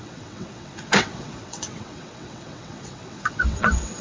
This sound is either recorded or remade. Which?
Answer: remade